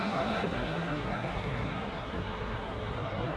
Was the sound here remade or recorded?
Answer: remade